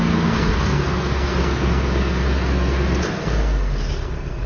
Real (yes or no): no